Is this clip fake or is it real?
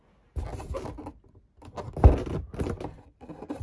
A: real